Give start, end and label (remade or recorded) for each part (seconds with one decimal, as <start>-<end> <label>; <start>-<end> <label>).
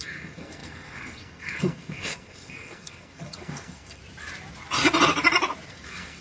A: 0.0-4.0 remade; 4.0-5.7 recorded; 5.7-6.2 remade